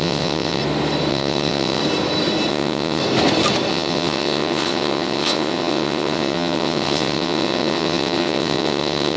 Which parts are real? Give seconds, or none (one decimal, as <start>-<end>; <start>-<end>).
0.6-1.1; 1.8-2.5; 3.0-3.7

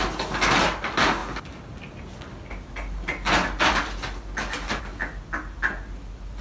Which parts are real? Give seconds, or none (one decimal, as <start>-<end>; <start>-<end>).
0.0-6.4

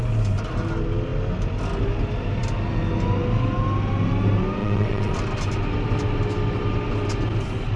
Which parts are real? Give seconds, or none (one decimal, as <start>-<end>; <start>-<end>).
0.0-4.6; 5.2-7.8

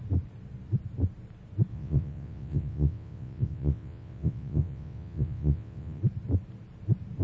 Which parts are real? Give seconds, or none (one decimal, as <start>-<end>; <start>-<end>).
0.0-1.7; 6.0-7.2

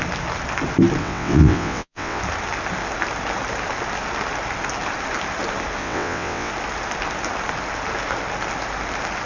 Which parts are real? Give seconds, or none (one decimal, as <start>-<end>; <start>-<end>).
0.0-1.0; 2.2-5.8; 6.5-9.3

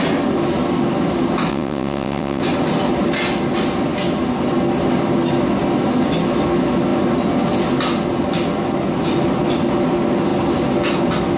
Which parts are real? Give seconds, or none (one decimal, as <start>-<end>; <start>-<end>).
0.0-1.5; 2.4-11.4

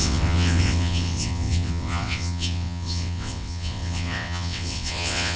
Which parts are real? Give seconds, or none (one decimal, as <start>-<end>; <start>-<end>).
none

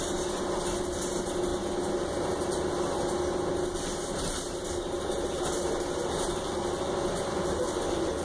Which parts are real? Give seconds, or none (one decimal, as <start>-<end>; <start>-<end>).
0.0-8.2